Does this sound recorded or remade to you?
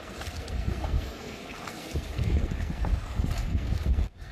remade